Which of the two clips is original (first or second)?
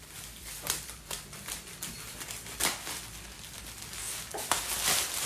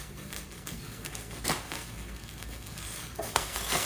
first